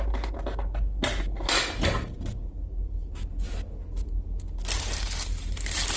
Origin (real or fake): real